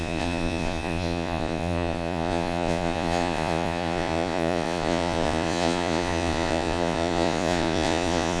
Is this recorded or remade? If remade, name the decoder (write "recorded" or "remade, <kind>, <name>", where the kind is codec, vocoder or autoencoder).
remade, vocoder, Vocos